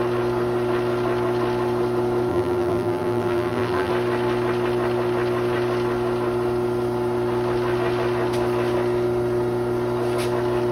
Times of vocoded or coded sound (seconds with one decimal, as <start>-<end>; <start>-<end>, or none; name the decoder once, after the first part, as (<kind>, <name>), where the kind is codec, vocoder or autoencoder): 2.3-3.9 (vocoder, BigVGAN v2)